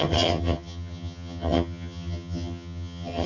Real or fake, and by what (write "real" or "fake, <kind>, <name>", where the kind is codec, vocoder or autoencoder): fake, vocoder, HiFi-GAN